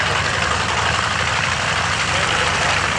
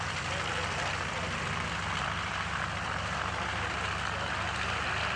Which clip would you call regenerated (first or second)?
first